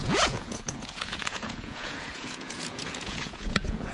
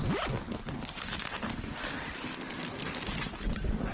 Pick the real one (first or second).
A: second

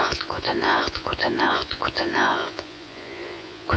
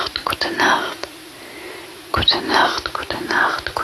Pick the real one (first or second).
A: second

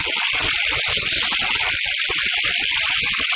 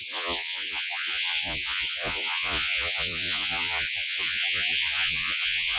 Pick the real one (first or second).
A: first